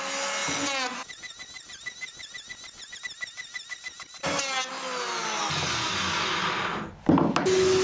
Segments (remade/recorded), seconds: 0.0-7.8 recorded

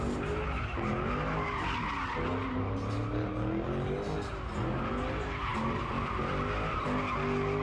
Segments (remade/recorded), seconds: 0.0-7.6 recorded